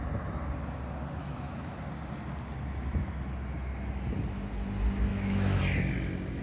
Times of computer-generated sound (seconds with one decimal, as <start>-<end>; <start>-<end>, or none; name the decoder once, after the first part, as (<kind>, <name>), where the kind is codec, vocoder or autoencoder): 1.2-1.8 (autoencoder, DAC-VAE); 5.1-5.6